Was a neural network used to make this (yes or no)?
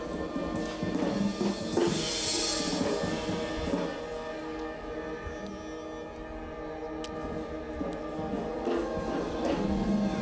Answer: no